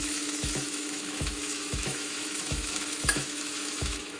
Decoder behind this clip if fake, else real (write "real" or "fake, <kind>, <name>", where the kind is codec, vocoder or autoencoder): fake, autoencoder, DAC-VAE